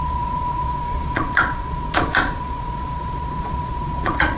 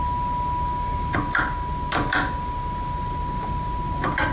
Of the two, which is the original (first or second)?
second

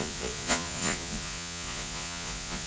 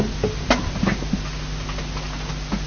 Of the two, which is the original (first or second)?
second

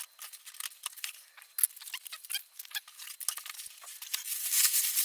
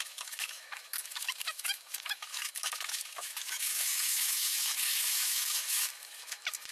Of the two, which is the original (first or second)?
first